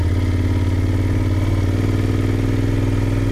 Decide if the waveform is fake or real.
real